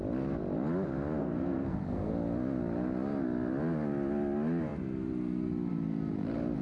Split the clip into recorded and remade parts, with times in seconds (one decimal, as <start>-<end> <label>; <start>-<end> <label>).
0.0-1.2 recorded; 1.2-2.1 remade; 2.1-6.6 recorded

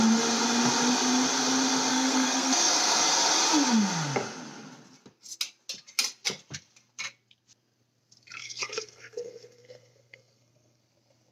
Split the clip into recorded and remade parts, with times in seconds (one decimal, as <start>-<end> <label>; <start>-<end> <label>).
0.0-1.9 recorded; 1.9-3.0 remade; 3.0-8.4 recorded; 8.4-10.8 remade; 10.8-11.3 recorded